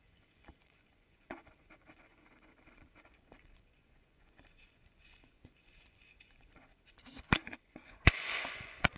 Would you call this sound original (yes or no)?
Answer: no